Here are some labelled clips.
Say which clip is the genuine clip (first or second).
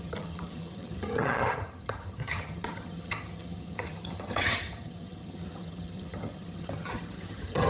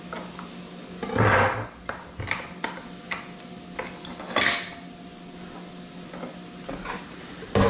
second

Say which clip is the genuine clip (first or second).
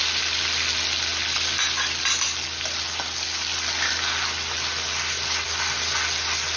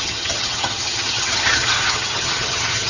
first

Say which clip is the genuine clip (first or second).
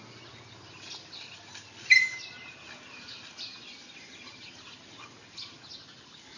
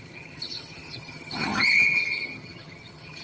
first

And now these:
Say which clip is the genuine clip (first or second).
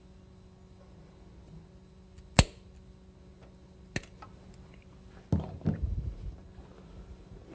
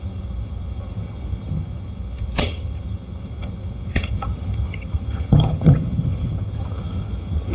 first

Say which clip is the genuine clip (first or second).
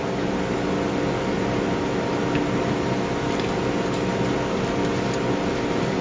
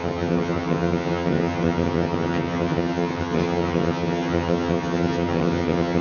first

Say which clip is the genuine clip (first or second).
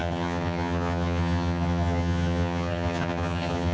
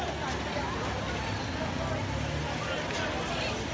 second